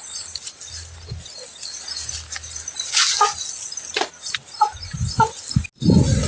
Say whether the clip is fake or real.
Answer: real